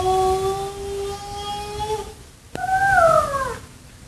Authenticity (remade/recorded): recorded